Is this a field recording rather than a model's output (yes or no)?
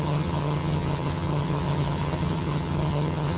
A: no